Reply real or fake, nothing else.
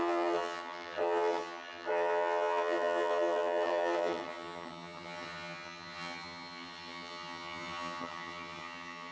fake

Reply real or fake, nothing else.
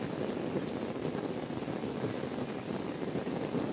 real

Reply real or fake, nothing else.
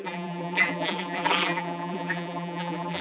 fake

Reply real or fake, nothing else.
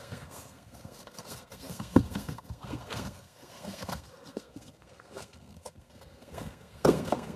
fake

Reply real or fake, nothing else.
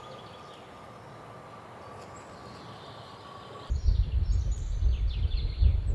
real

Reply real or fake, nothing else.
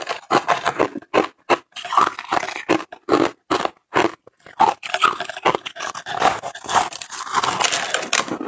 real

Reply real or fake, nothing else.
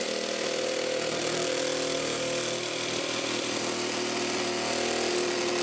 real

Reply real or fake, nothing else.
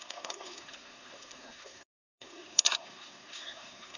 fake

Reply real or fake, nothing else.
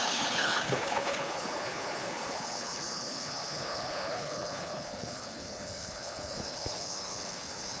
fake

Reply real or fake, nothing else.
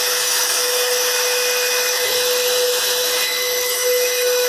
fake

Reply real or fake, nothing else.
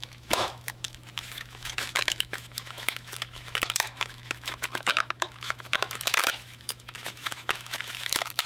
fake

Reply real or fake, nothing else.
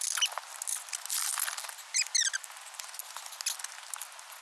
real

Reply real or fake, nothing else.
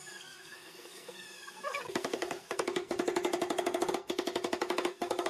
fake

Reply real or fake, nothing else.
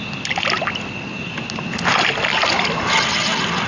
real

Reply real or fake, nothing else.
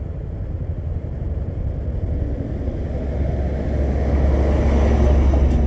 real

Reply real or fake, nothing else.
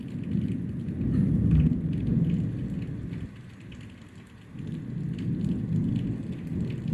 real